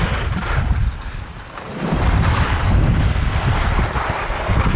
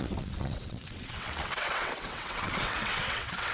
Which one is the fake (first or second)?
second